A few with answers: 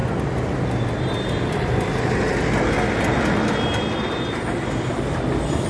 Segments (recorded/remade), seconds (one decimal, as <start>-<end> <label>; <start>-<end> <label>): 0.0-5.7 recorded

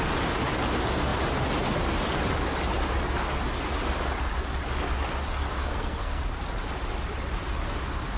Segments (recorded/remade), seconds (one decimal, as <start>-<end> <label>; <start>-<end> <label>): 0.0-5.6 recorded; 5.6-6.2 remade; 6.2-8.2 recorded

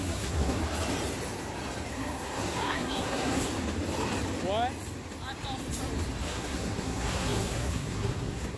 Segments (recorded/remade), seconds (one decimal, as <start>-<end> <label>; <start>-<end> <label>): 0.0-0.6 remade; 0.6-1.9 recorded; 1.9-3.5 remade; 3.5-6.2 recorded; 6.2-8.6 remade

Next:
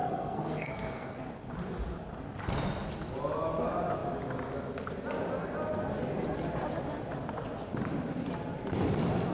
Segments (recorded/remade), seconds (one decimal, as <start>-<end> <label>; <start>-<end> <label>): 0.0-1.2 remade; 1.2-9.3 recorded

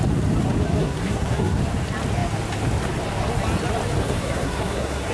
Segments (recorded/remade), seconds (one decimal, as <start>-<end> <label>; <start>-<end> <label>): 0.0-0.8 recorded; 0.8-1.6 remade; 1.6-4.0 recorded; 4.0-5.1 remade